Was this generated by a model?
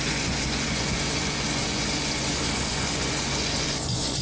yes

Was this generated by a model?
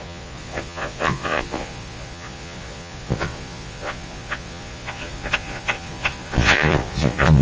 yes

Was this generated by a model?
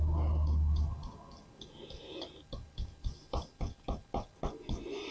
no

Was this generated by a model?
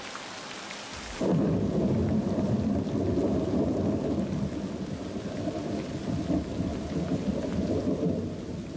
no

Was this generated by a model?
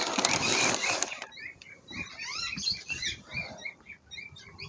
yes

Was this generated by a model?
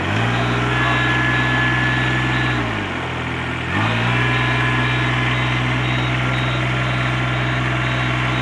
no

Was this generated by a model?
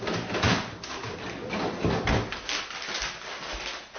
no